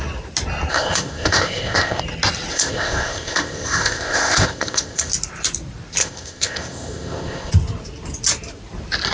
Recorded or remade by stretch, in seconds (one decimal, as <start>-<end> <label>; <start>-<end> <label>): 0.0-0.7 recorded; 0.7-2.0 remade; 2.0-2.5 recorded; 2.5-5.1 remade; 5.1-6.0 recorded; 6.0-7.5 remade; 7.5-9.1 recorded